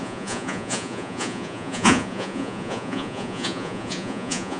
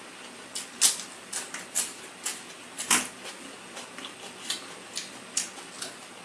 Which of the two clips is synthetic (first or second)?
first